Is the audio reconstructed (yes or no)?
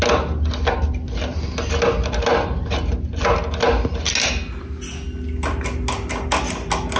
no